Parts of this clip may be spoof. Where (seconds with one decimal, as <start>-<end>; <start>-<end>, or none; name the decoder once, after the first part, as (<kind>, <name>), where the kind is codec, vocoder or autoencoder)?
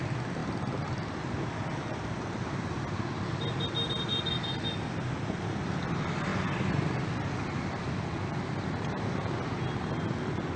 none